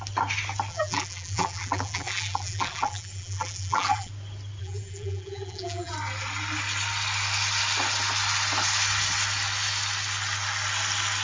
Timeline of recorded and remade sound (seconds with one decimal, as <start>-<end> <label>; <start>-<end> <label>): 0.0-0.7 recorded; 0.7-4.1 remade; 4.1-4.6 recorded; 4.6-5.9 remade; 5.9-11.2 recorded